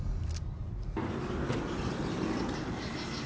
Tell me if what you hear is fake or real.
real